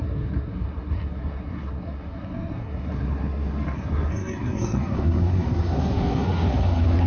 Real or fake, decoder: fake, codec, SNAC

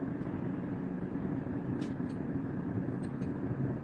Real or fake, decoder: real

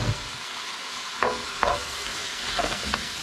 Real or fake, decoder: fake, codec, SNAC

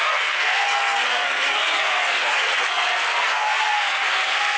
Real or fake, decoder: fake, codec, SNAC